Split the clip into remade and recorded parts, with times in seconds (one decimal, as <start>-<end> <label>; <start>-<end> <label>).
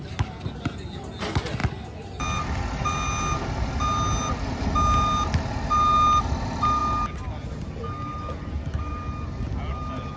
0.0-10.2 recorded